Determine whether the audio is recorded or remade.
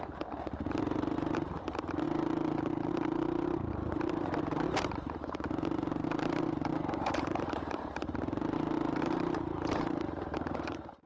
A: remade